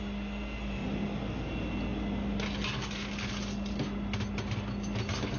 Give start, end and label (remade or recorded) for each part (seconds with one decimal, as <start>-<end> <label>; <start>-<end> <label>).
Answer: 0.0-5.4 recorded